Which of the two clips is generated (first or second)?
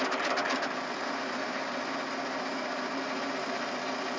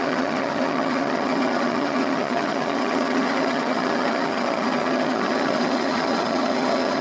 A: second